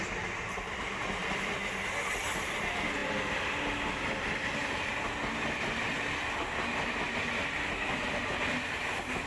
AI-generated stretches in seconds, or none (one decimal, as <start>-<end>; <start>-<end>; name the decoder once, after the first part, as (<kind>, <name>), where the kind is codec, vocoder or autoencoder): none